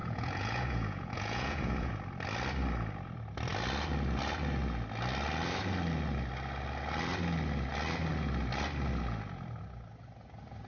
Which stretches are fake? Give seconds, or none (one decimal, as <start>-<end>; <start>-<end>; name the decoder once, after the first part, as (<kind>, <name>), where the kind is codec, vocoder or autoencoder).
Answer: 0.0-1.9 (vocoder, Vocos)